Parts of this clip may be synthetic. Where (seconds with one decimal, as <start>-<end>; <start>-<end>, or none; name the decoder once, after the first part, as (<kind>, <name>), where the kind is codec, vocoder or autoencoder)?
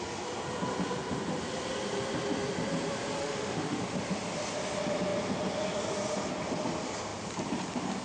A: 3.2-3.8 (autoencoder, DAC-VAE)